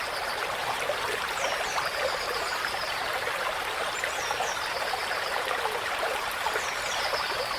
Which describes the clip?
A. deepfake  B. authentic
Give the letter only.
A